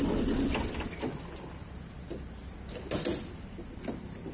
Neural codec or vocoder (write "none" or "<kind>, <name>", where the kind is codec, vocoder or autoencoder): none